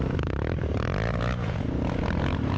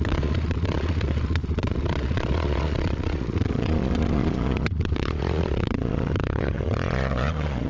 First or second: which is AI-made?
second